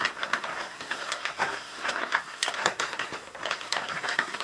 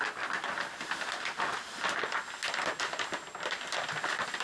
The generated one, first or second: first